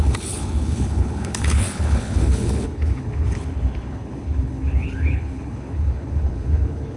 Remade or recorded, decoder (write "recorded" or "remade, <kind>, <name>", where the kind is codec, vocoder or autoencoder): remade, codec, HILCodec